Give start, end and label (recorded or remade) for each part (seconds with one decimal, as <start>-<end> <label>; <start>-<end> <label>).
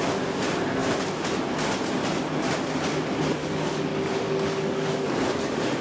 0.0-3.4 recorded; 3.4-5.8 remade